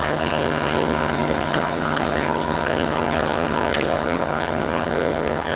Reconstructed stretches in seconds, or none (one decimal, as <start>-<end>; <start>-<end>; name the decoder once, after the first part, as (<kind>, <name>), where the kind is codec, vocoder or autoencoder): 0.0-5.6 (vocoder, HiFi-GAN)